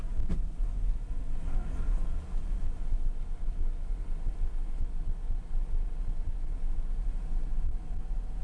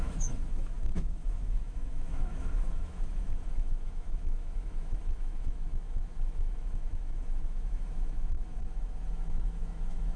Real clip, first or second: first